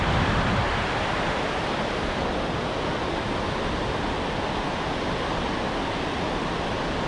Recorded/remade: recorded